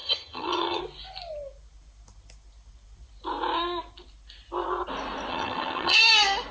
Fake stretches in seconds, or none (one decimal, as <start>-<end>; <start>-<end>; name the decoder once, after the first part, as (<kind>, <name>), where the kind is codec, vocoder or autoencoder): 0.0-0.8 (vocoder, HiFi-GAN); 5.3-6.0